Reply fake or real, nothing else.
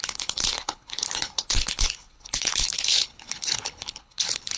fake